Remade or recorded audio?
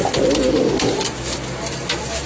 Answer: recorded